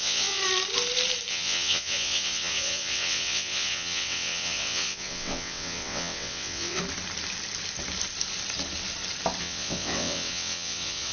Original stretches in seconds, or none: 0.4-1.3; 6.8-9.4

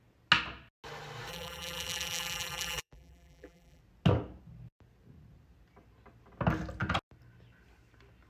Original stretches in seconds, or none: 0.0-1.3; 3.8-8.3

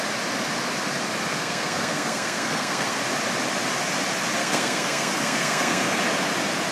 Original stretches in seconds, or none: 0.0-1.3; 3.0-4.4; 6.0-6.7